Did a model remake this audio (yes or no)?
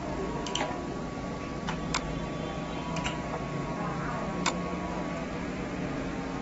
no